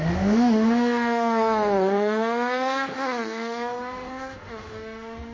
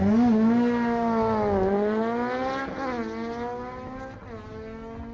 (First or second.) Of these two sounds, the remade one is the first